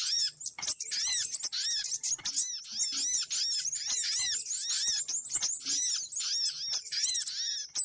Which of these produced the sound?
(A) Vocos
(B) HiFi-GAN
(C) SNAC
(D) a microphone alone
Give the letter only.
D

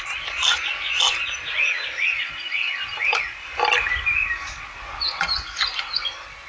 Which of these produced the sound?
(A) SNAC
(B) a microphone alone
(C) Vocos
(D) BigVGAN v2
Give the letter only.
B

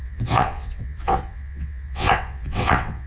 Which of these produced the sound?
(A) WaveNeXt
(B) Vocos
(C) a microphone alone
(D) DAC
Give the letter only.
A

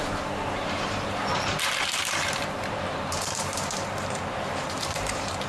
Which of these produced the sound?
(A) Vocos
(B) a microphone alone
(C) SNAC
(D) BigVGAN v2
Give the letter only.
D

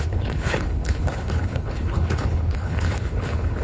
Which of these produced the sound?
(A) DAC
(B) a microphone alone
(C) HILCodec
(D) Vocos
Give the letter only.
C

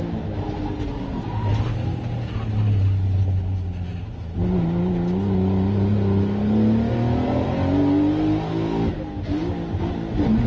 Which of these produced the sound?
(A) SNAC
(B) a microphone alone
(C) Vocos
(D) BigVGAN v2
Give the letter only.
B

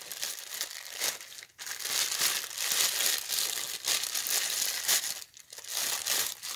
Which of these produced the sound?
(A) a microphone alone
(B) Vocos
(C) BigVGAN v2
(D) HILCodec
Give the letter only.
A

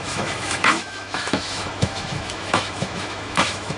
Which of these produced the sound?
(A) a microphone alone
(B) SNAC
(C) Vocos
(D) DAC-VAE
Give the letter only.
D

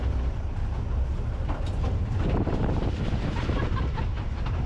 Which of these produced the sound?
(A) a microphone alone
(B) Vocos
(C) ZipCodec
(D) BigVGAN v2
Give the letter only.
D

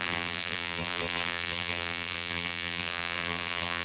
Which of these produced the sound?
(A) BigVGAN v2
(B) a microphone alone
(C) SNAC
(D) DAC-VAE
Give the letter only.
A